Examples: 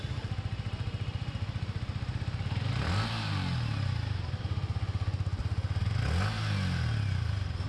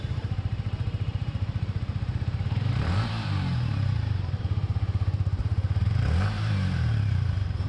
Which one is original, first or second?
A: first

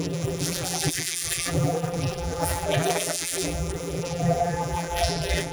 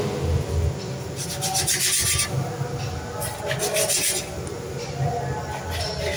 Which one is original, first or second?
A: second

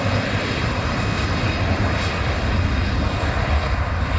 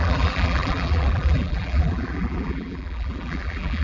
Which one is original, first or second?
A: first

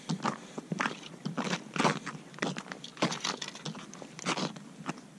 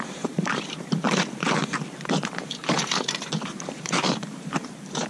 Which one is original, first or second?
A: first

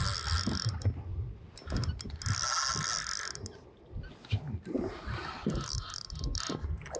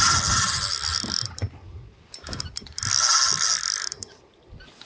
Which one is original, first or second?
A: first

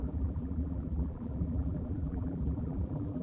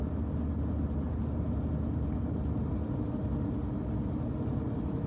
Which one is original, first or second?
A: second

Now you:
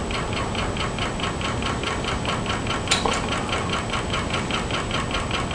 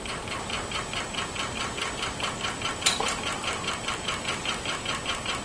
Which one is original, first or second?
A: first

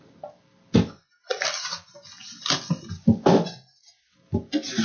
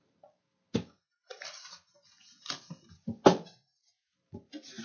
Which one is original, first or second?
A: first